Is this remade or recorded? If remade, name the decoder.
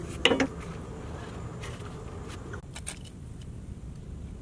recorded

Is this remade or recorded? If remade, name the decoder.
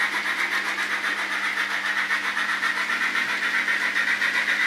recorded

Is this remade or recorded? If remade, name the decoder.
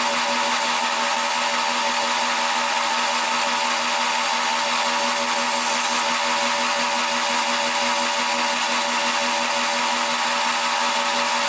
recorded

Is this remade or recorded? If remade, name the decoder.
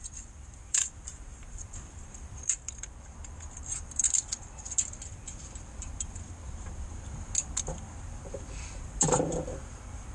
remade, vocoder, BigVGAN v2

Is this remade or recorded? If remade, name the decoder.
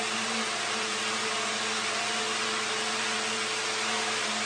recorded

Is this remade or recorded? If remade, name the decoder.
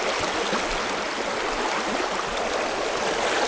recorded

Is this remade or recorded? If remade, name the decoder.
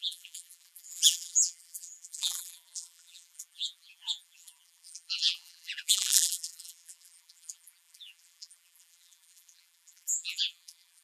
remade, vocoder, BigVGAN v2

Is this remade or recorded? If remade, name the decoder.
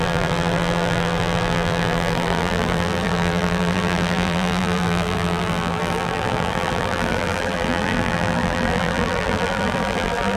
remade, vocoder, BigVGAN v2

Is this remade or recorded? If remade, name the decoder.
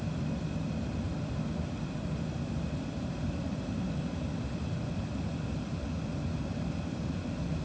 remade, vocoder, BigVGAN v2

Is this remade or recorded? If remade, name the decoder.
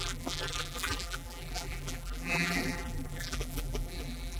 remade, vocoder, BigVGAN v2